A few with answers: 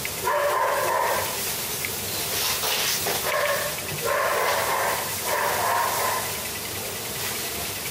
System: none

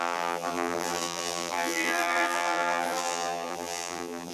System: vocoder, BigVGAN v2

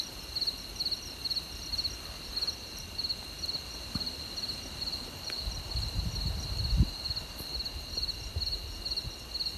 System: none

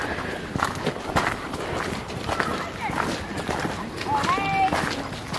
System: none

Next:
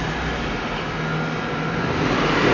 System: none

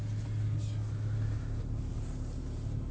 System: none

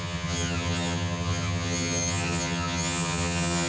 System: vocoder, HiFi-GAN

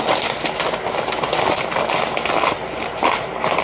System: none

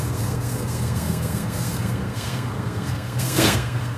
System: codec, SNAC